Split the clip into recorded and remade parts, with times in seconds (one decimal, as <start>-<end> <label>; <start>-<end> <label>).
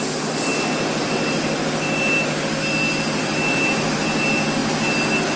0.0-5.4 recorded